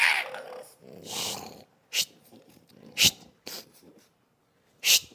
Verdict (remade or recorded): remade